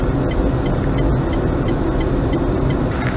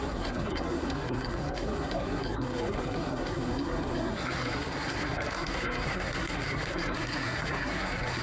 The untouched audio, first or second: first